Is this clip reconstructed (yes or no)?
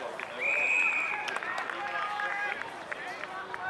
no